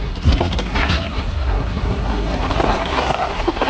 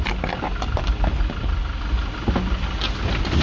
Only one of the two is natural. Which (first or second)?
second